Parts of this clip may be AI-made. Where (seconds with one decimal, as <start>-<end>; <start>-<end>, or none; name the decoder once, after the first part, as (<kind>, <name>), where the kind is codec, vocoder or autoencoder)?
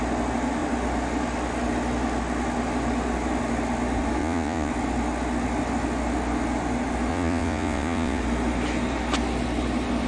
4.2-4.7 (vocoder, Vocos); 7.1-8.2